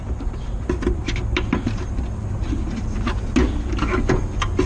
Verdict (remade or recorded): recorded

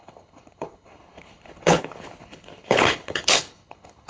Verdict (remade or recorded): remade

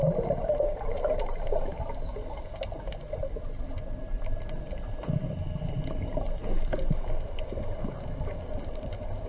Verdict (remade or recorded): recorded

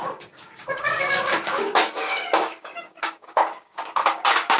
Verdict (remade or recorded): remade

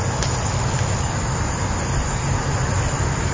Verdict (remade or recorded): recorded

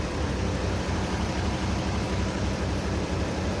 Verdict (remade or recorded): remade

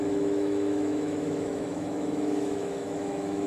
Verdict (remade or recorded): remade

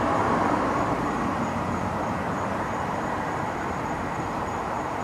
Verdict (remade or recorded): remade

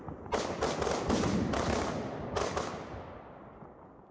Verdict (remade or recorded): recorded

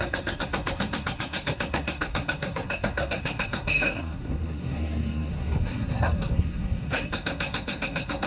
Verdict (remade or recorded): remade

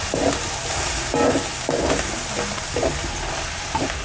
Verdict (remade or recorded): recorded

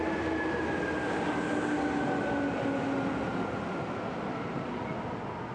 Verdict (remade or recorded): recorded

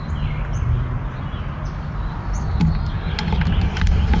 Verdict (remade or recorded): recorded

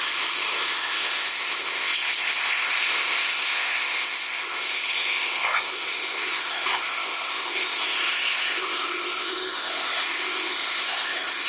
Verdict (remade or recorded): remade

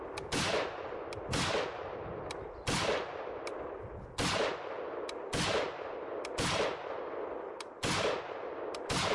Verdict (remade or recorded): recorded